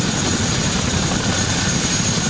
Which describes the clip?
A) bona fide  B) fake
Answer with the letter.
A